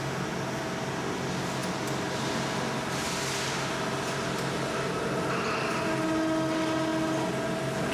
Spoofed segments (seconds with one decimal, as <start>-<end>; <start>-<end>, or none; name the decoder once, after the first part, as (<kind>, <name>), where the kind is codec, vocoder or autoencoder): none